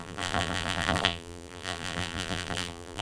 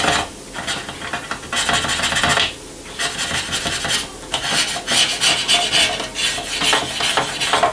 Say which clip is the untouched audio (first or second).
second